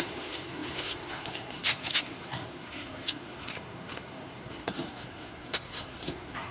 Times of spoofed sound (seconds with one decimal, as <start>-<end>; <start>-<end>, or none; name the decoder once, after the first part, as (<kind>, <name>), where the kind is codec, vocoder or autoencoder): 0.0-6.5 (codec, SNAC)